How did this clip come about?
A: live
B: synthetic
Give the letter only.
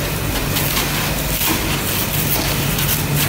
A